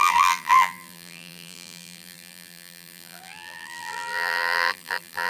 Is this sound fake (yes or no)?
yes